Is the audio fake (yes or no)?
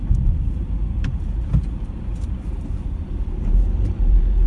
yes